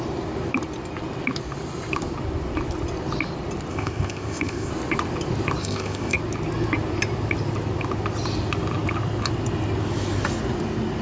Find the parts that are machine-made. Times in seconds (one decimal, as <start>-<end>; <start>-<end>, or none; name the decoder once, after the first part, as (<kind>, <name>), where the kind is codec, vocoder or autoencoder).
3.7-4.7 (codec, ZipCodec); 5.6-6.2